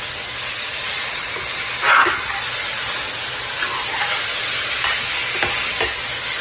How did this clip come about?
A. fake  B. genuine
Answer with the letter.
B